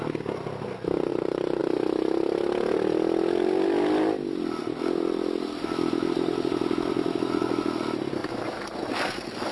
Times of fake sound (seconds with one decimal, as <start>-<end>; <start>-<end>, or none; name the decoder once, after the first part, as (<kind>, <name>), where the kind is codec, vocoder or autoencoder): 1.1-1.6 (vocoder, BigVGAN v2)